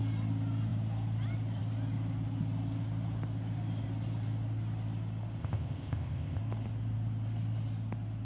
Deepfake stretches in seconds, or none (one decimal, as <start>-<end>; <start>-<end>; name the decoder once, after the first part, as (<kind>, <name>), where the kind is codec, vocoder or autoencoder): 5.4-6.4 (codec, ZipCodec)